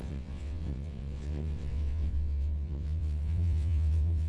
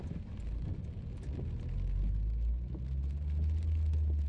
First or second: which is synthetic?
first